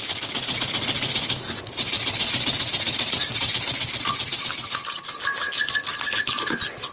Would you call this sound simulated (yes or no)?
no